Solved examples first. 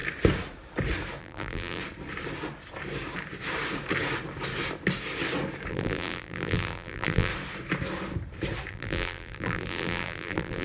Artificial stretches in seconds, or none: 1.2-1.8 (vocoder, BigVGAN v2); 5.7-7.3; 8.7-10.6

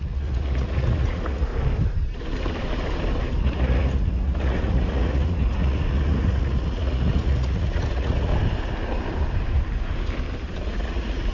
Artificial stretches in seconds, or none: 0.0-1.5 (vocoder, Vocos); 3.4-8.3; 10.6-11.3